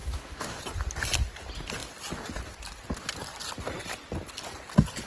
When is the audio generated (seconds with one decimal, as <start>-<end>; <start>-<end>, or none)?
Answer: 0.0-0.6